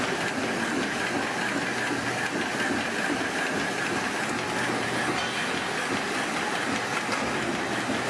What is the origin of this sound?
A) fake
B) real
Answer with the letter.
B